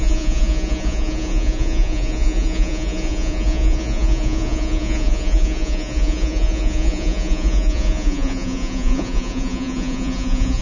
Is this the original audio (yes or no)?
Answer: no